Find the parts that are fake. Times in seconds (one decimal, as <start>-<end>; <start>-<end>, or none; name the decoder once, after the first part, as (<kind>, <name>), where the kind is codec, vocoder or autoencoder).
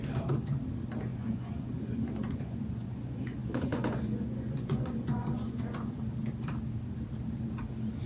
1.1-6.0 (vocoder, Vocos)